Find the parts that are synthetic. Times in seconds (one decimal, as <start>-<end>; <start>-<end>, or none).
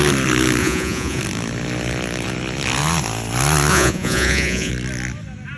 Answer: 0.6-1.2; 3.7-4.7